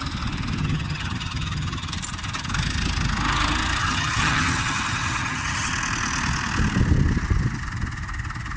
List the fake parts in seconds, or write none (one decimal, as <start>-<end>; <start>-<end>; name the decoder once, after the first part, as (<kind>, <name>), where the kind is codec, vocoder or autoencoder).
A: 0.6-1.9 (vocoder, HiFi-GAN); 3.8-5.7